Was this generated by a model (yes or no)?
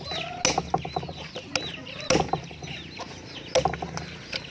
no